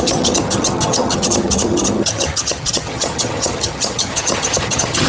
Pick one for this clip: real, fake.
fake